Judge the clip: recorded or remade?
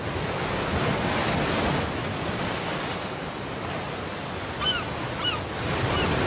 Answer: recorded